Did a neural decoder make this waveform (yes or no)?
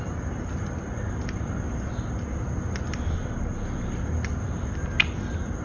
no